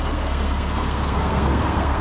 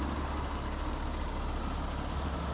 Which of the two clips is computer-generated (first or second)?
first